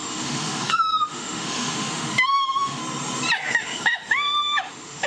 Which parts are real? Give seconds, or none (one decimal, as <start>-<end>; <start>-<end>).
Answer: 2.8-3.5